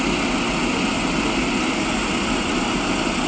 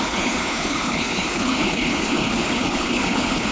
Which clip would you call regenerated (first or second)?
second